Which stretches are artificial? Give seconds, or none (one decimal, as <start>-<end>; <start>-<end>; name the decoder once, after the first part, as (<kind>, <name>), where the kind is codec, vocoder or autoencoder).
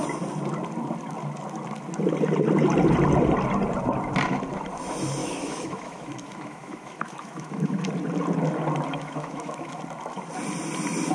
5.2-7.9 (autoencoder, DAC-VAE); 8.9-9.8